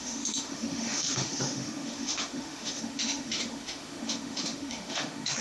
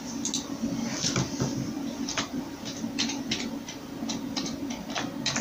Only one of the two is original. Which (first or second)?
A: second